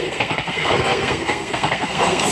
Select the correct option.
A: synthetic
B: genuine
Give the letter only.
A